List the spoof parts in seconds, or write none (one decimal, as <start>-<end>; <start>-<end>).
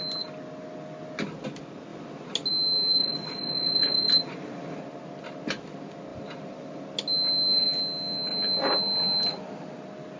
3.0-4.8; 6.1-6.8